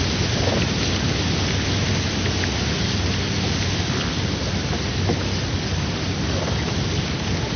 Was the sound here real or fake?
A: real